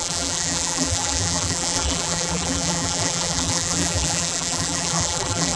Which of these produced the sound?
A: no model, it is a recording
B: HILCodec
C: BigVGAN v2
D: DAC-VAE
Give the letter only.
C